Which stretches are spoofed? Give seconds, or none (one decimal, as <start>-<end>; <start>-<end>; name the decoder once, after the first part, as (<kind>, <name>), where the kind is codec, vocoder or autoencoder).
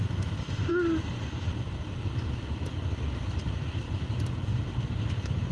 none